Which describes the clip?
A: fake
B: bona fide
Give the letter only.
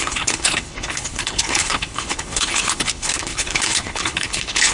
A